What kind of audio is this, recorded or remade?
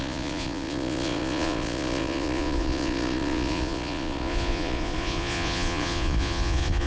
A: remade